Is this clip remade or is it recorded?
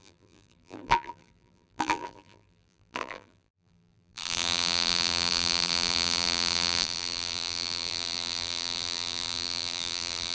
remade